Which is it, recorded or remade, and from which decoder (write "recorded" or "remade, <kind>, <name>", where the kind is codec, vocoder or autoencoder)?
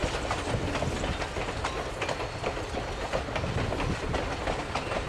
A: recorded